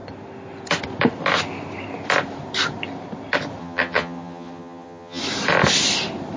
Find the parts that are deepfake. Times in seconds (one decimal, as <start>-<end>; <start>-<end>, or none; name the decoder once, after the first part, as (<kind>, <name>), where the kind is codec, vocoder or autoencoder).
3.6-5.2 (vocoder, HiFi-GAN)